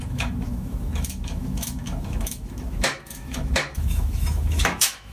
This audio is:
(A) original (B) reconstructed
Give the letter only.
B